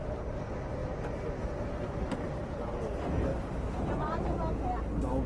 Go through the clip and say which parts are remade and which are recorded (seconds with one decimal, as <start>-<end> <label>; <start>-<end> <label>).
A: 0.0-3.3 recorded; 3.3-4.3 remade; 4.3-5.3 recorded